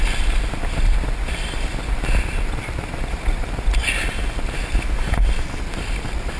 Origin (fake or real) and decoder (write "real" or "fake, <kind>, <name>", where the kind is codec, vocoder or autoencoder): real